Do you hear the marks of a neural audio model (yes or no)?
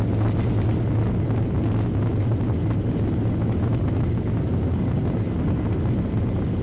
no